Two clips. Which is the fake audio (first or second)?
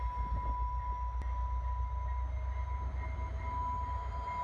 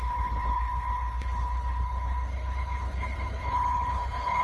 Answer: second